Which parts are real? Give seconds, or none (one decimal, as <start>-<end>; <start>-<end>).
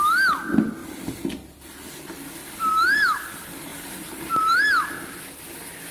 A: 0.0-0.8; 2.0-2.4; 3.2-3.7; 4.6-5.9